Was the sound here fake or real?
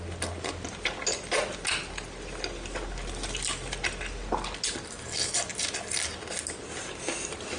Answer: real